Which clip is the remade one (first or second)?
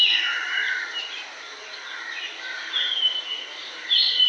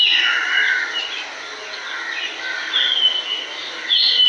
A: first